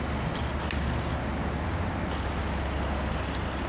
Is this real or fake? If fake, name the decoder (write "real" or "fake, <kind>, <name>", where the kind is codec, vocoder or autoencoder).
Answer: real